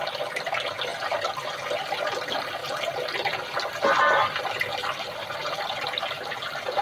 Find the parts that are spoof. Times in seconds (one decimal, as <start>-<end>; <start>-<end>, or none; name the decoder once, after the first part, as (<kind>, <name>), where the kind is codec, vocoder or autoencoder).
none